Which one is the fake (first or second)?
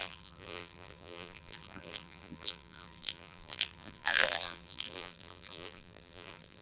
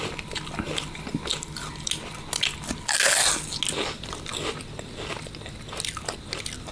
first